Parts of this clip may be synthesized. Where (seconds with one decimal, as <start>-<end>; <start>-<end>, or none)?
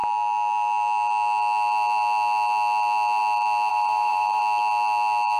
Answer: 3.7-4.4